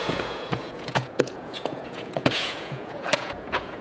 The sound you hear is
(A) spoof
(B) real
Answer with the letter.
A